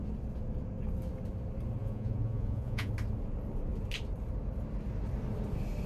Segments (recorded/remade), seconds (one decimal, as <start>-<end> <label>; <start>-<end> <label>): 0.0-1.8 recorded; 1.8-2.9 remade; 2.9-5.9 recorded